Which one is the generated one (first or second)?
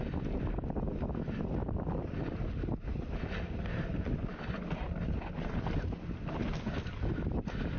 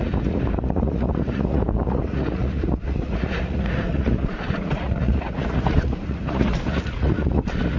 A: second